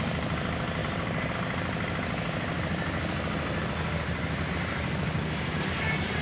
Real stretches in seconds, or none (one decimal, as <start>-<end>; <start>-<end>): 0.0-0.8; 1.3-6.2